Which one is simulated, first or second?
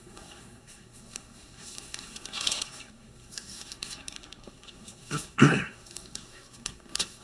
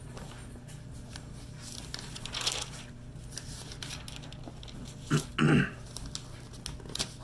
first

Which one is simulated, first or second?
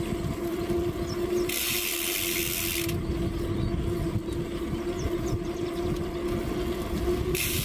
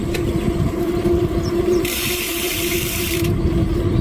second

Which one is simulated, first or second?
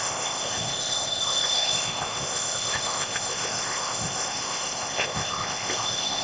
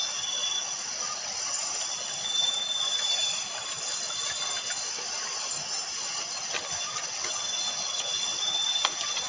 first